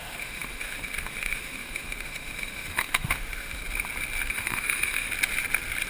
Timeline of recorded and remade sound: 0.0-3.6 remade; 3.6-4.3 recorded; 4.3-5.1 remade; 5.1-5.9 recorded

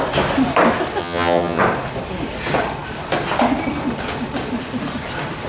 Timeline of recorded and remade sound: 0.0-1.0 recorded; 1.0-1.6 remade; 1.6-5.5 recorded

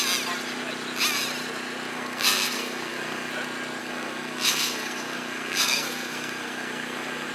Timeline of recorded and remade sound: 0.0-1.9 recorded; 1.9-3.3 remade; 3.3-3.8 recorded; 3.8-7.3 remade

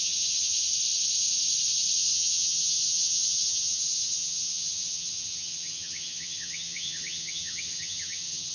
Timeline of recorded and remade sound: 0.0-0.7 remade; 0.7-2.0 recorded; 2.0-8.5 remade

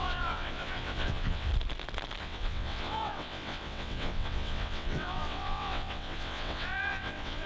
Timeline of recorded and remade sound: 0.0-1.5 remade; 1.5-2.2 recorded; 2.2-7.5 remade